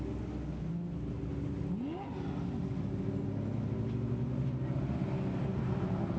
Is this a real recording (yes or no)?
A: yes